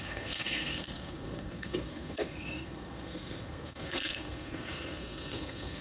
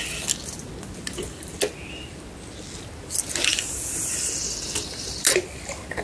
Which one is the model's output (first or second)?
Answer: first